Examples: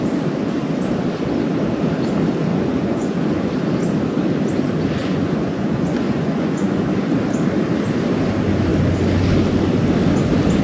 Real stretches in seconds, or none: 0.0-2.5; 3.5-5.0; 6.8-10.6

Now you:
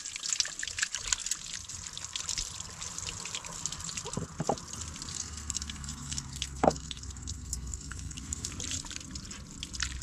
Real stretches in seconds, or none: 0.0-5.1; 8.5-10.0

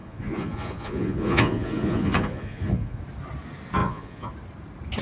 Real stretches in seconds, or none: 3.0-3.8; 4.3-5.0

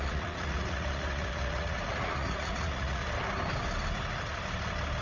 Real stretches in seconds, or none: 3.0-5.0

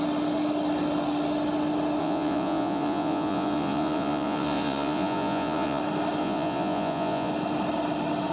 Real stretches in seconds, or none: 0.0-2.0; 5.8-6.2; 7.3-8.3

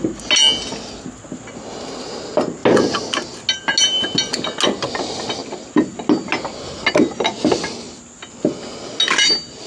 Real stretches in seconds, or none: 0.0-9.7

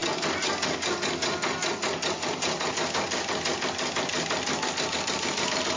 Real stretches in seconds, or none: 0.0-5.8

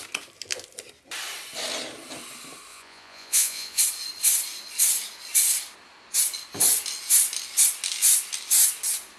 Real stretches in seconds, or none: 0.0-2.7; 3.8-9.2